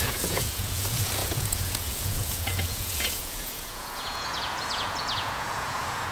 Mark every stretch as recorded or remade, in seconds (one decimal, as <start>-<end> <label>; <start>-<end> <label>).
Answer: 0.0-6.1 remade